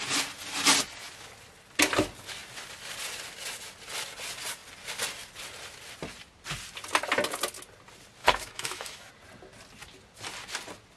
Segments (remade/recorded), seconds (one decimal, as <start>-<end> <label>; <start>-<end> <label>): 0.0-8.2 recorded; 8.2-9.1 remade; 9.1-11.0 recorded

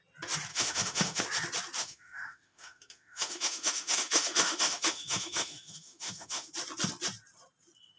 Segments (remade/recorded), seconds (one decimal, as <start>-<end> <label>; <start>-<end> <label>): 0.0-0.5 recorded; 0.5-1.2 remade; 1.2-1.8 recorded; 1.8-6.5 remade; 6.5-8.0 recorded

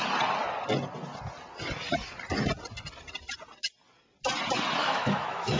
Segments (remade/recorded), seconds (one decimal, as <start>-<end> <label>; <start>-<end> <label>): 0.0-4.8 recorded; 4.8-5.6 remade

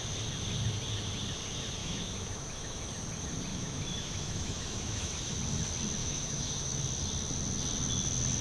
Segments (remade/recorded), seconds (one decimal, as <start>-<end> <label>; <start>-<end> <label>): 0.0-1.8 recorded; 1.8-2.9 remade; 2.9-3.5 recorded; 3.5-5.3 remade; 5.3-6.0 recorded; 6.0-6.8 remade; 6.8-8.4 recorded

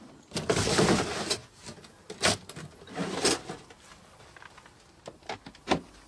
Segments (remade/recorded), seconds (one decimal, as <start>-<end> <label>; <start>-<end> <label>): 0.0-6.1 recorded

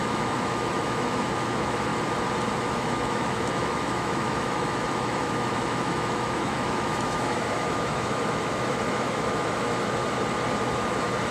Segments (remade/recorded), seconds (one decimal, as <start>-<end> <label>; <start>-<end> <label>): 0.0-1.9 remade; 1.9-2.6 recorded; 2.6-10.0 remade; 10.0-10.7 recorded; 10.7-11.3 remade